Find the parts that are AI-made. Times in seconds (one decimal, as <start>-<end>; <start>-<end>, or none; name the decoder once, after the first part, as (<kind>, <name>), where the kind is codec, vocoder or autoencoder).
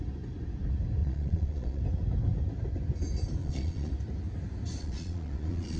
1.0-1.8 (vocoder, Vocos); 3.4-3.9; 4.8-5.8